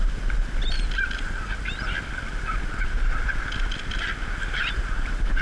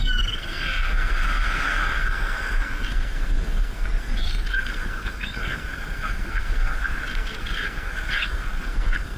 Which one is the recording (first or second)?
first